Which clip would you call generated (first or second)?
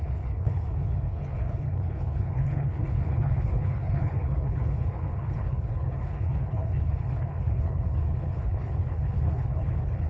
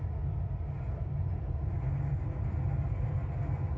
first